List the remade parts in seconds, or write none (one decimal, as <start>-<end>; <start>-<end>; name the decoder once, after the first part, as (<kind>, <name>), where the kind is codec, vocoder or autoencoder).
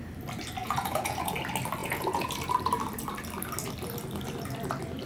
0.6-1.3 (vocoder, Vocos); 1.8-2.3